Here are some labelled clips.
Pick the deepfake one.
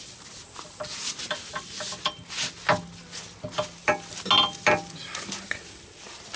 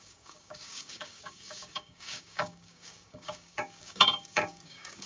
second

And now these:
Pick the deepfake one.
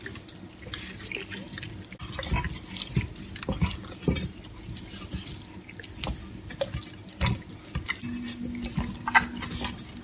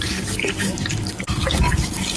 second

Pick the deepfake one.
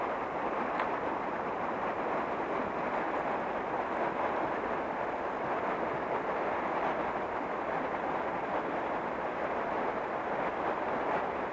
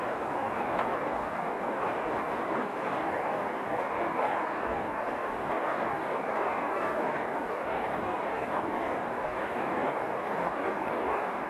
second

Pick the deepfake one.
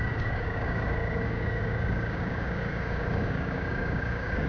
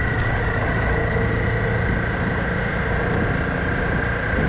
first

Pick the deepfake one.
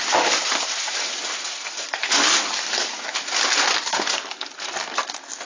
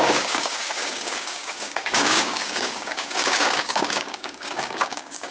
second